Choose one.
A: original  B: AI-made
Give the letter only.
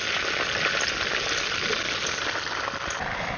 A